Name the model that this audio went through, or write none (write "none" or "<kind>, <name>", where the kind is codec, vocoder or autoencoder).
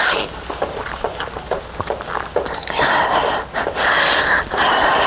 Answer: none